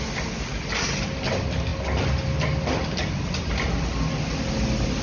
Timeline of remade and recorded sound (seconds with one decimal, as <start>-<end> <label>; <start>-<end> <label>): 0.0-5.0 recorded